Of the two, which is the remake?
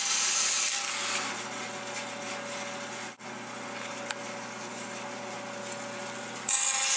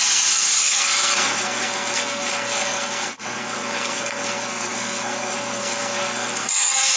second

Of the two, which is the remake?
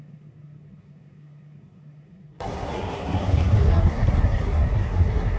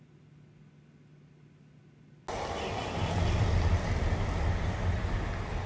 first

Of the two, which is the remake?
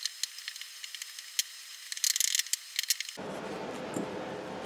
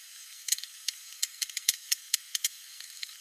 second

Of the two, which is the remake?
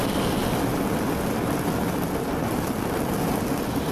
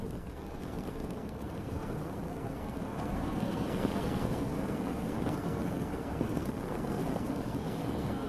second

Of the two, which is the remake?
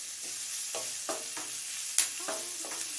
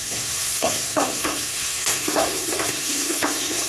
second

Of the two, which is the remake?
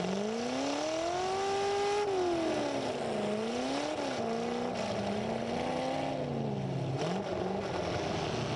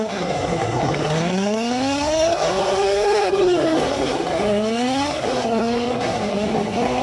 second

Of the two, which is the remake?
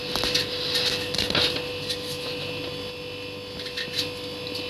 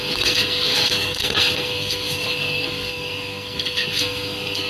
second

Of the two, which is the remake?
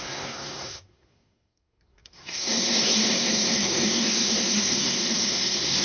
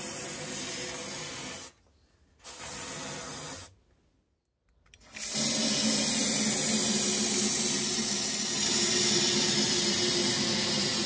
first